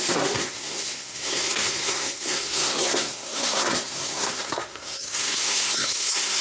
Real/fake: fake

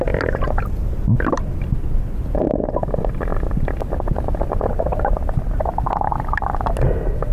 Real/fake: real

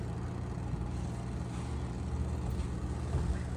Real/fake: real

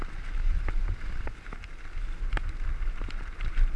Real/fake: real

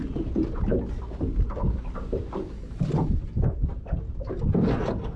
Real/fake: real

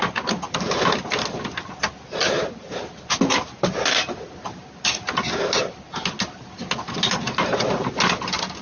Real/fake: real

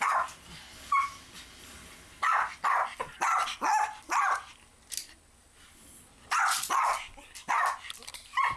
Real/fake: real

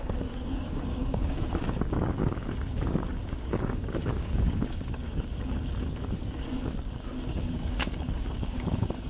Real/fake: fake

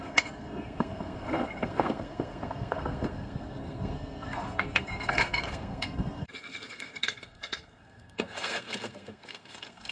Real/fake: fake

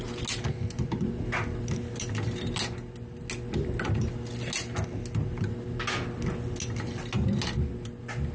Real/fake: real